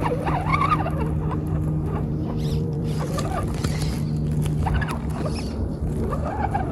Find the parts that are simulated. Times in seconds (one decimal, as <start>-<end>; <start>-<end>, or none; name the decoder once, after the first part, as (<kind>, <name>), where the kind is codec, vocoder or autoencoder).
0.0-0.5 (vocoder, BigVGAN v2); 1.8-3.6; 4.4-5.1; 5.7-6.7